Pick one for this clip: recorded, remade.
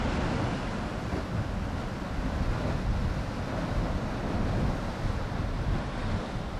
recorded